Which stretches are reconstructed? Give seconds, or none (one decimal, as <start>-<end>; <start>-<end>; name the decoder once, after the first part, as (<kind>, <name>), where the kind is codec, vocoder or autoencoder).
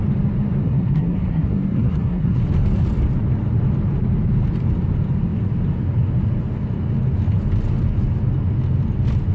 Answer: 0.6-2.4 (codec, SNAC)